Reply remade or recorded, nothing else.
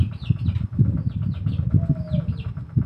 recorded